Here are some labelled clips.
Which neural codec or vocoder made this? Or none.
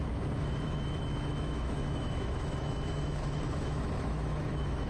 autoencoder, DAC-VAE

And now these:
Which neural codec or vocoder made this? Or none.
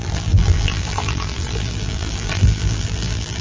vocoder, BigVGAN v2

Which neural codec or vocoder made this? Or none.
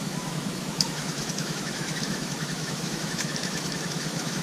autoencoder, DAC-VAE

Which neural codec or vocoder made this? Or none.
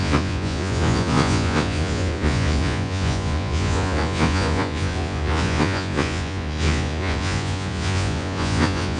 vocoder, Vocos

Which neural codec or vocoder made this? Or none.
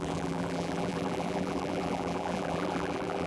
vocoder, BigVGAN v2